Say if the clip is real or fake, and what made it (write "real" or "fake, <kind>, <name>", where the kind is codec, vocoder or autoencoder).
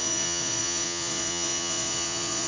fake, vocoder, Vocos